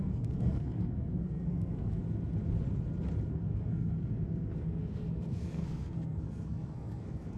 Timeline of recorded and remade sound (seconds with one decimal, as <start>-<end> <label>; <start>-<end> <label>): 0.0-2.0 remade; 2.0-3.3 recorded; 3.3-7.4 remade